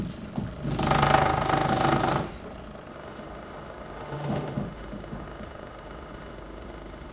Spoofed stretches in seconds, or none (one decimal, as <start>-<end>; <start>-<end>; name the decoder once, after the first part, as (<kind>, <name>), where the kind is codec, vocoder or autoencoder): 2.9-7.1 (autoencoder, DAC-VAE)